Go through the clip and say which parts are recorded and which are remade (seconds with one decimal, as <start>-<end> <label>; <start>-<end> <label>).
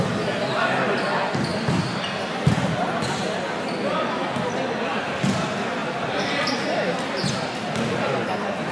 0.0-8.7 recorded